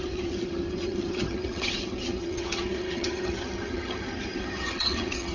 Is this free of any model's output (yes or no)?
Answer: no